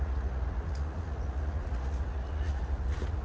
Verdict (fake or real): fake